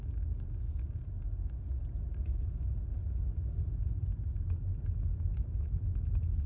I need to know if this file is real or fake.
real